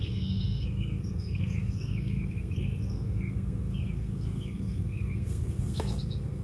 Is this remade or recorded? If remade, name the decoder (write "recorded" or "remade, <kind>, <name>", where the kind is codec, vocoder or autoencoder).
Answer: remade, codec, SNAC